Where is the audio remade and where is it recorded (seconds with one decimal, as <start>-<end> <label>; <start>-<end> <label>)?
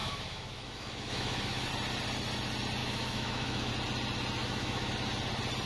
0.0-1.7 remade; 1.7-2.8 recorded; 2.8-3.7 remade; 3.7-4.4 recorded; 4.4-4.9 remade; 4.9-5.7 recorded